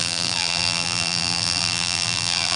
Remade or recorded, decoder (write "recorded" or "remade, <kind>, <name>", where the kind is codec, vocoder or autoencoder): remade, vocoder, BigVGAN v2